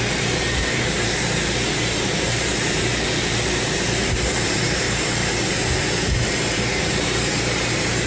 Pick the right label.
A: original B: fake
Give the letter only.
B